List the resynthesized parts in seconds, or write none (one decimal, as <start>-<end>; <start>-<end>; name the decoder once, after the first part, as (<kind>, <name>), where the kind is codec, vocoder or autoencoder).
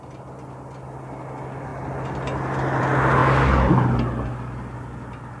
none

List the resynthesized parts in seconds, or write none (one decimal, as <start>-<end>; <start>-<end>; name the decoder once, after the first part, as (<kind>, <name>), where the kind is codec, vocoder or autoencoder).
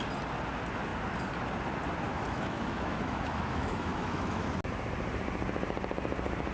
2.1-4.5 (autoencoder, DAC-VAE)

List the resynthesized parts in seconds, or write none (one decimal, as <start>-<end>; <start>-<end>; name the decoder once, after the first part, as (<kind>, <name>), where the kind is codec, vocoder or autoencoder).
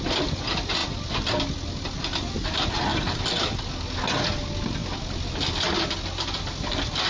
none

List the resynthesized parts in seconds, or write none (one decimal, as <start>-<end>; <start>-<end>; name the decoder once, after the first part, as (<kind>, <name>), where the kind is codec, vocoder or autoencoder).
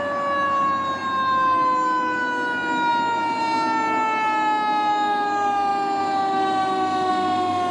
none